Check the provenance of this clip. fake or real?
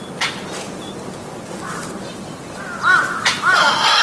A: real